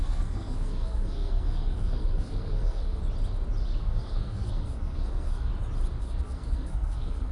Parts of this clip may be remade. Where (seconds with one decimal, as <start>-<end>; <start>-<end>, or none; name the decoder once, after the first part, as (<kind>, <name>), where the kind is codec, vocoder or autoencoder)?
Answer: 0.0-3.0 (codec, SNAC); 3.8-5.5; 6.0-7.3